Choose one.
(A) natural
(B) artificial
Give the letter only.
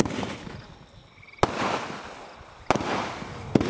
A